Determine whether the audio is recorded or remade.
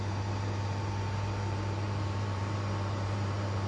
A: remade